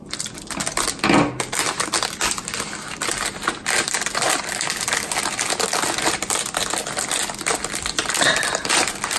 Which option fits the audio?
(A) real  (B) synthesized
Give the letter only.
A